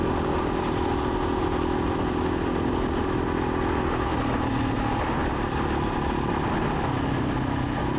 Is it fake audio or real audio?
real